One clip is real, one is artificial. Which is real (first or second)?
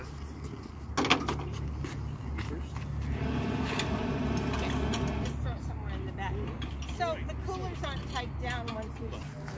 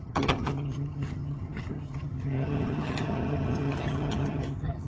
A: first